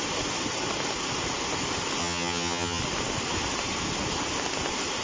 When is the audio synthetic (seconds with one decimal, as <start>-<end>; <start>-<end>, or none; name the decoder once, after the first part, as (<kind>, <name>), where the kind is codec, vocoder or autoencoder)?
2.0-2.8 (vocoder, HiFi-GAN)